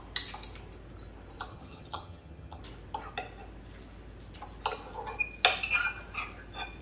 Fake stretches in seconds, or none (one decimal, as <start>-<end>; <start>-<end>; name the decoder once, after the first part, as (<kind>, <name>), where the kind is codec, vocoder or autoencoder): 1.5-2.6 (vocoder, HiFi-GAN)